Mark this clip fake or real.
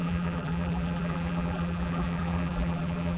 fake